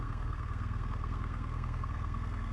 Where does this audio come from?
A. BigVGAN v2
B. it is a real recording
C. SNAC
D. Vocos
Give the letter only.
C